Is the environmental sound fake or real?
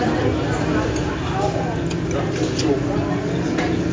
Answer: real